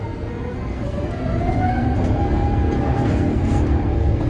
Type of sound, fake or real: fake